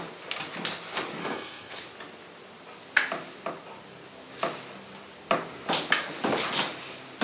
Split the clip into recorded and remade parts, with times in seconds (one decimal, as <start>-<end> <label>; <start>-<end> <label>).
0.0-1.2 recorded; 1.2-1.8 remade; 1.8-7.2 recorded